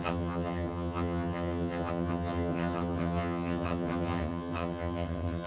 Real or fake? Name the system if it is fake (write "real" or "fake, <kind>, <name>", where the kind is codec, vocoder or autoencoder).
fake, vocoder, HiFi-GAN